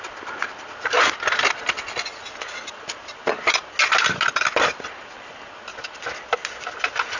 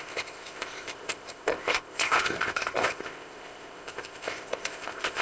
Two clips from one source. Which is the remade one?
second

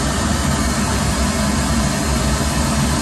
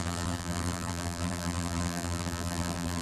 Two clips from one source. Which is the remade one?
second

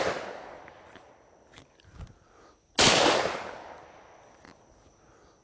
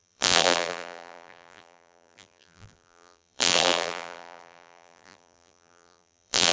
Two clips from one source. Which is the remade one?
second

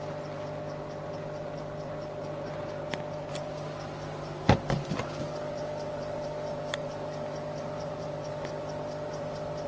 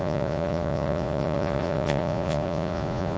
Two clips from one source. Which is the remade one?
second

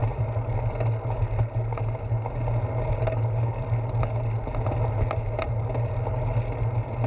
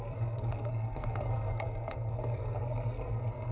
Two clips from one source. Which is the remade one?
second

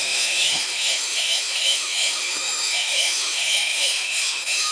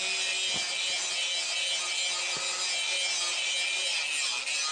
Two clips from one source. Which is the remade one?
first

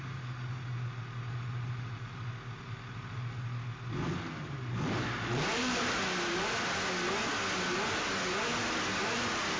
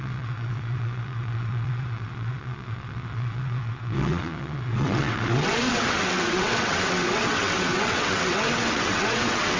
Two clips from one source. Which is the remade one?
second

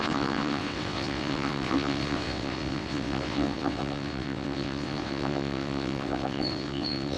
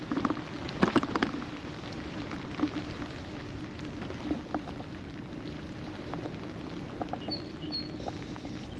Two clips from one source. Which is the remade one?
first